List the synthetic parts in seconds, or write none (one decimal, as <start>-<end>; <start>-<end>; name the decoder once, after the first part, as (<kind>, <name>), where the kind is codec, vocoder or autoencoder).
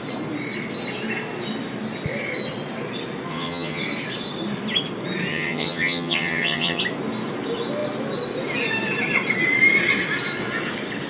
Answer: 3.3-3.8 (vocoder, HiFi-GAN); 5.3-6.8